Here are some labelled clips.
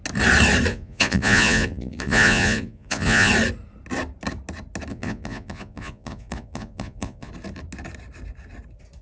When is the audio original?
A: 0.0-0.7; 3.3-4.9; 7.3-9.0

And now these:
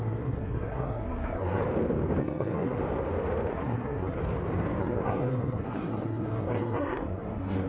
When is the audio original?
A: 1.6-2.2; 2.8-3.5; 4.2-4.8

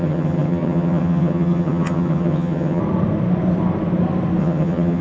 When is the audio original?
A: 2.8-4.4